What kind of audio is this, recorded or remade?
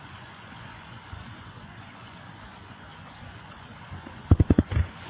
remade